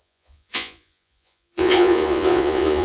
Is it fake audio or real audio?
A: fake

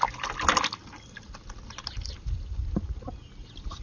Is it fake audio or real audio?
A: real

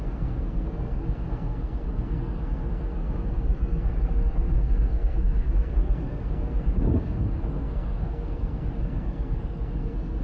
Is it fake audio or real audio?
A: fake